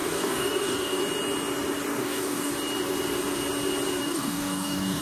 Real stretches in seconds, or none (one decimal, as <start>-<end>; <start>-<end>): 1.0-1.9; 2.5-4.0